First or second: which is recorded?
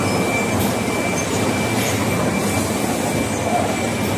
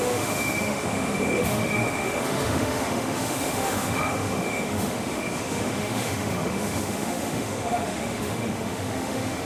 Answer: first